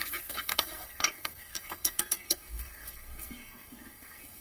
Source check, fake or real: fake